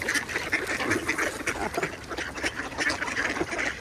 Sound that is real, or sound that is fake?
real